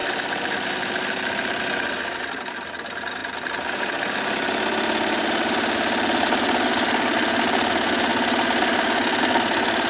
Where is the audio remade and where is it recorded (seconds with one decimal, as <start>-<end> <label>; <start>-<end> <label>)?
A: 0.0-1.6 remade; 1.6-9.9 recorded